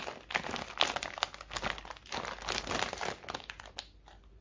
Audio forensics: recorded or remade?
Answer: recorded